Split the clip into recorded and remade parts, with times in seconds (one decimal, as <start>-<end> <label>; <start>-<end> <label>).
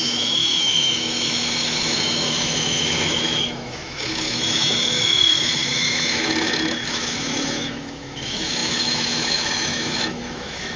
0.0-10.8 remade